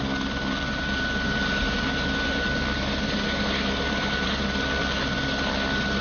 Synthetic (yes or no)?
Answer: no